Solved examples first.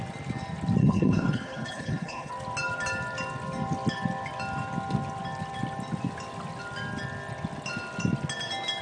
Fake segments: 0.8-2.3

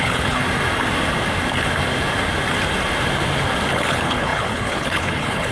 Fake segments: 0.0-0.4; 3.7-5.5

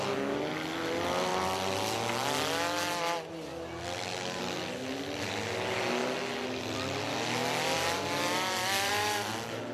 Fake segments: none

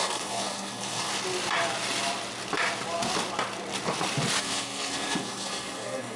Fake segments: 0.0-1.1; 4.4-6.2

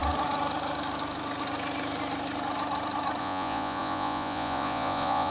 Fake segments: 3.2-5.3

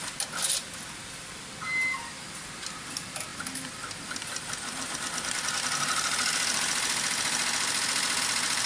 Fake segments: none